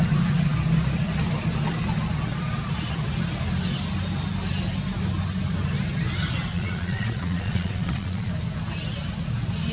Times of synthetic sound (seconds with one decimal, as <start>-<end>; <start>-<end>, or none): 6.5-8.3